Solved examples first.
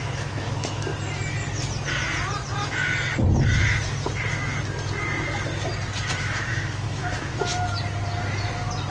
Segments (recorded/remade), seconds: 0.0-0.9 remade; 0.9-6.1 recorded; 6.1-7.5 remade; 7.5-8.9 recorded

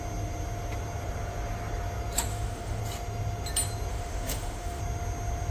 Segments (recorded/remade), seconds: 0.0-2.3 recorded; 2.3-2.8 remade; 2.8-3.9 recorded; 3.9-4.8 remade; 4.8-5.5 recorded

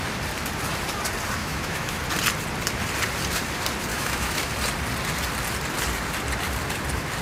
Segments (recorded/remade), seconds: 0.0-1.4 recorded; 1.4-2.0 remade; 2.0-3.9 recorded; 3.9-4.5 remade; 4.5-7.2 recorded

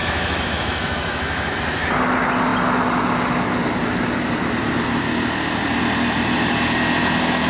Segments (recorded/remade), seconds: 0.0-1.6 remade; 1.6-7.5 recorded

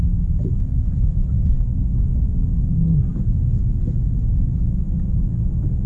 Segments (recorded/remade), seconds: 0.0-5.9 recorded

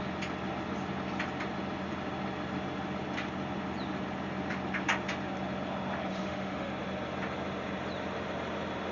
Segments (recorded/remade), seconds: 0.0-6.1 recorded; 6.1-6.7 remade; 6.7-8.9 recorded